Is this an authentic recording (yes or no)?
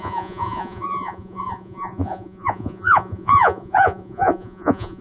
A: no